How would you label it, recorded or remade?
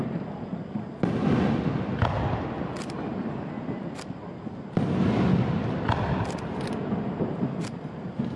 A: recorded